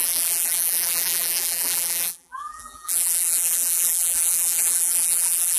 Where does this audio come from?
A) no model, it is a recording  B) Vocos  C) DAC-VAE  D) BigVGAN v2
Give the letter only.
D